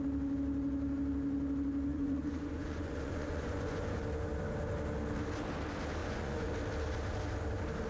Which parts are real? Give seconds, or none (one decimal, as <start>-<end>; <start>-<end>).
0.0-1.9; 4.0-6.0; 6.5-7.9